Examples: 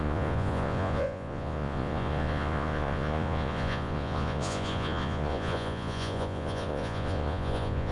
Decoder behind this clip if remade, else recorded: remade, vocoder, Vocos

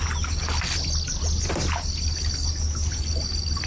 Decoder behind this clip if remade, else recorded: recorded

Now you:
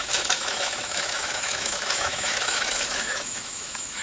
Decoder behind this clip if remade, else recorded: remade, autoencoder, DAC-VAE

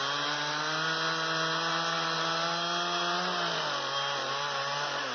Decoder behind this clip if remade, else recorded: recorded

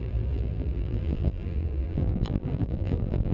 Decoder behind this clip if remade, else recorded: remade, vocoder, BigVGAN v2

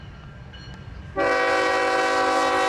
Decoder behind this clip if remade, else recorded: recorded